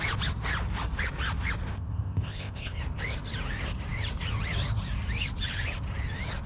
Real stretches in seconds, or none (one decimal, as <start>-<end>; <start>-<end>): 0.0-1.7; 2.8-6.5